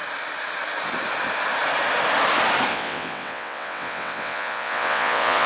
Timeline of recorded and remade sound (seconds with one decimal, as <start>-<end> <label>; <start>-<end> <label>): 0.0-2.7 recorded; 2.7-5.5 remade